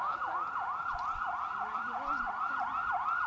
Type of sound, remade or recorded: remade